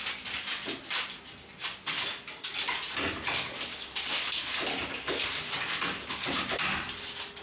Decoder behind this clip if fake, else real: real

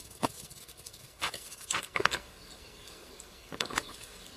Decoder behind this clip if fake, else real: fake, codec, SNAC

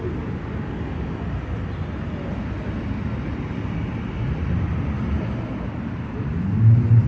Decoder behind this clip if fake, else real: real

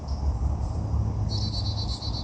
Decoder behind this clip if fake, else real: real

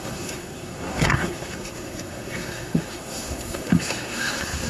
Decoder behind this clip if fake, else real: fake, codec, SNAC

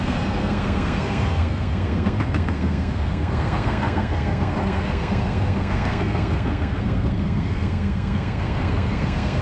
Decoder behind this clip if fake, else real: fake, codec, SNAC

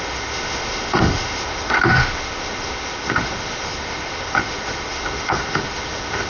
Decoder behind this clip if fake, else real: fake, autoencoder, DAC-VAE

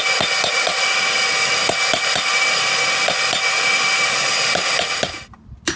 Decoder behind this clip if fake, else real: real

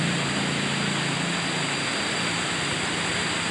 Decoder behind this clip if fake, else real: real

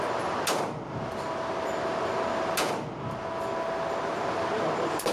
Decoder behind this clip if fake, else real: real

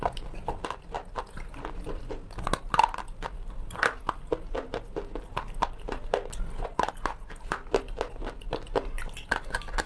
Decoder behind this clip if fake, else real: real